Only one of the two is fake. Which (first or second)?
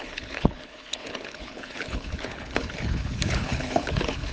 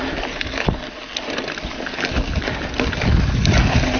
first